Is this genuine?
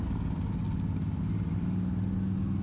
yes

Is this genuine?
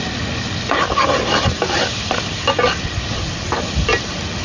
yes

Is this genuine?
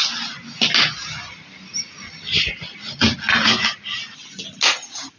yes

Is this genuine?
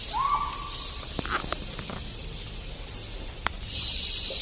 yes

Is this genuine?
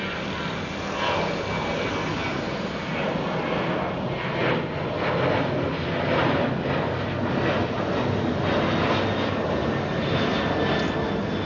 yes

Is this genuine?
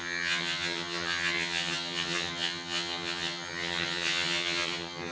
no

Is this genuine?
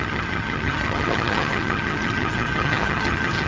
no